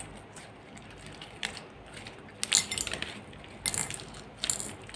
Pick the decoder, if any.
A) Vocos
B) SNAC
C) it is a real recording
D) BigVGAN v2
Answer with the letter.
C